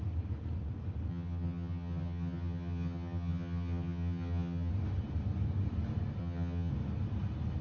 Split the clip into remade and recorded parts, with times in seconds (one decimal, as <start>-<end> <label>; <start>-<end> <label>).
0.0-1.1 recorded; 1.1-4.7 remade; 4.7-6.2 recorded; 6.2-6.7 remade; 6.7-7.6 recorded